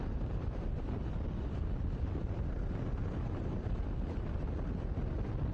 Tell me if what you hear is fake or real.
real